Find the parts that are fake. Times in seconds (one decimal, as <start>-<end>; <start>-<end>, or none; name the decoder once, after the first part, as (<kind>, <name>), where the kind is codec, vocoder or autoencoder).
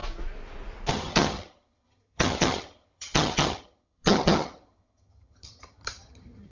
0.9-6.5 (vocoder, HiFi-GAN)